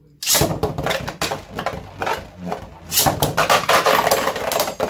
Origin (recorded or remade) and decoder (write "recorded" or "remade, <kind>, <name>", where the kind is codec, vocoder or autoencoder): recorded